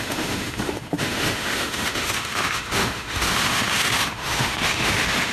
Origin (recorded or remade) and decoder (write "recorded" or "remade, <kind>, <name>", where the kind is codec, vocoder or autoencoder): remade, autoencoder, DAC-VAE